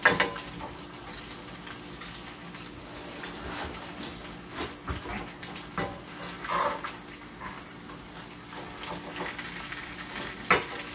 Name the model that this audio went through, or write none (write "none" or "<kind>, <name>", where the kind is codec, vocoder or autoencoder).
none